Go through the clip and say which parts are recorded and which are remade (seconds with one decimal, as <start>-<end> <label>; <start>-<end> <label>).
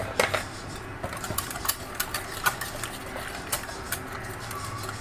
0.0-5.0 recorded